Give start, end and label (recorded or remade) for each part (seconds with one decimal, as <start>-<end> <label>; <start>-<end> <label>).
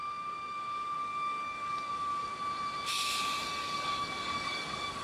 0.0-2.3 remade; 2.3-3.4 recorded; 3.4-5.0 remade